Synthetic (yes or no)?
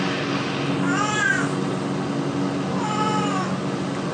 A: no